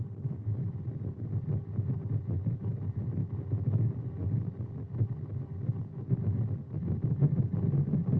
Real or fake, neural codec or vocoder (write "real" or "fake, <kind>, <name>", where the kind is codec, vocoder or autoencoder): real